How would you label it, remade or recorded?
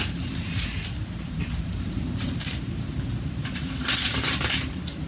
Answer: remade